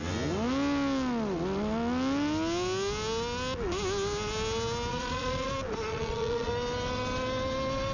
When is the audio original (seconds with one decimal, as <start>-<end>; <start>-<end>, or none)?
0.0-4.9; 5.5-5.9; 6.5-7.9